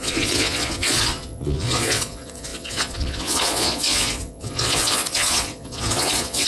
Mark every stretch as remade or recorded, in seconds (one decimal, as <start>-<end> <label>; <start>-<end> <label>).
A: 0.0-6.5 remade